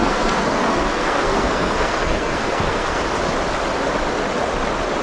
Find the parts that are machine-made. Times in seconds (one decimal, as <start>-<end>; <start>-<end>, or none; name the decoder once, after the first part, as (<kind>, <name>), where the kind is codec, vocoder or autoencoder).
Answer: 0.0-3.0 (codec, SNAC)